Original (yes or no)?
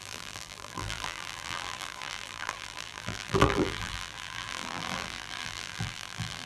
no